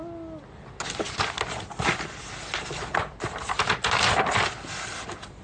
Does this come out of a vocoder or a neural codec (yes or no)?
no